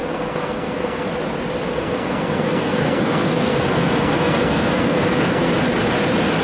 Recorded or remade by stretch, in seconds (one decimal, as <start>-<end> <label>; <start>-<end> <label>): 0.0-1.1 remade; 1.1-1.7 recorded; 1.7-5.5 remade; 5.5-6.4 recorded